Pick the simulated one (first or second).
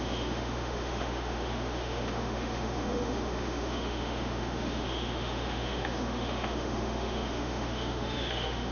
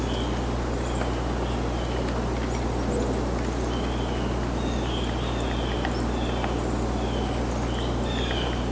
first